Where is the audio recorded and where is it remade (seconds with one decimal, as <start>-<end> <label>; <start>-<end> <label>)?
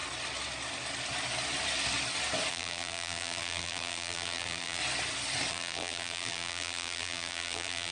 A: 0.0-2.5 recorded; 2.5-4.8 remade; 4.8-5.5 recorded; 5.5-7.9 remade